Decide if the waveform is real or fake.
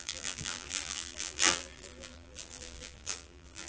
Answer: fake